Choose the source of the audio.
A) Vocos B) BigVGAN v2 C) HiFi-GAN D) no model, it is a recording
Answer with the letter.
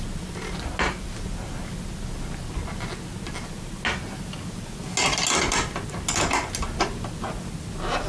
D